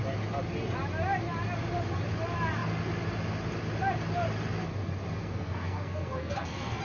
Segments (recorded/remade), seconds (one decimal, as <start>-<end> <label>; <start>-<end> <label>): 0.0-5.2 recorded; 5.2-6.8 remade